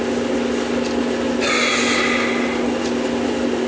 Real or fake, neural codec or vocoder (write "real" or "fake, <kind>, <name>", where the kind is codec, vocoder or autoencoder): real